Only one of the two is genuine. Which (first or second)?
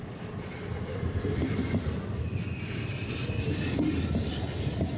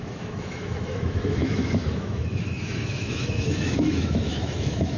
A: first